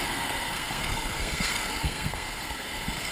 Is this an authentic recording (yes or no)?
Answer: no